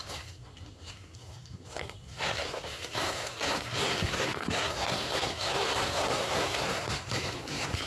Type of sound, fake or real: fake